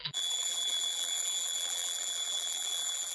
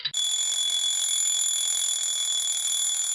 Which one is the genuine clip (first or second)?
second